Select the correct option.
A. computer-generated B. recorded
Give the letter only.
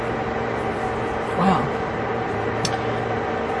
B